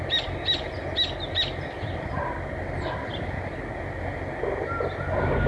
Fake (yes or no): no